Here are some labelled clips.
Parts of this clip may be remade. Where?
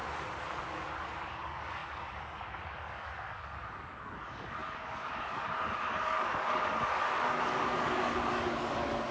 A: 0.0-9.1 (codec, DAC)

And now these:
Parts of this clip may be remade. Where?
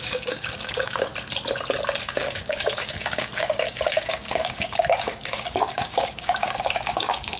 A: 0.0-1.1 (codec, DAC); 2.0-7.4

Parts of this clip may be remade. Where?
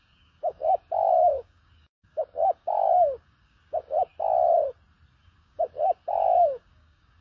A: 0.0-4.1 (codec, DAC); 5.2-7.2